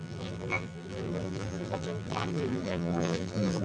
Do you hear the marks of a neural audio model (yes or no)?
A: yes